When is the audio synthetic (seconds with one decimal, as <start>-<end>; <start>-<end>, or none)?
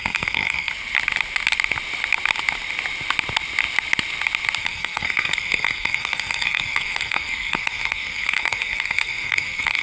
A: 0.0-0.7; 4.6-9.8